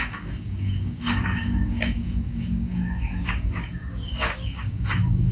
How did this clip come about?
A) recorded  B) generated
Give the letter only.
B